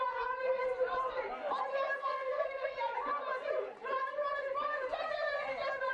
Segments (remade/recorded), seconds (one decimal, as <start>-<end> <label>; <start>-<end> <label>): 0.0-2.0 recorded; 2.0-2.7 remade; 2.7-5.9 recorded